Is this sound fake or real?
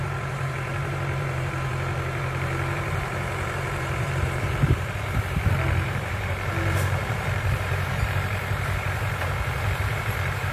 fake